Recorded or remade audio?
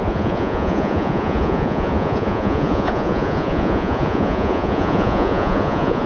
remade